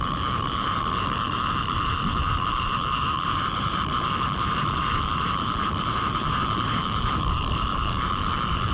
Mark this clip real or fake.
fake